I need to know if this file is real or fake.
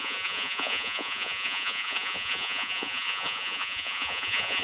fake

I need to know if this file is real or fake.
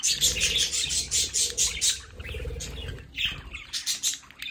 real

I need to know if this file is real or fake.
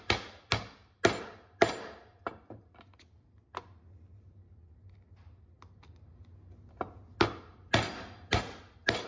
real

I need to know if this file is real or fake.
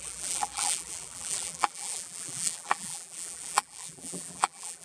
fake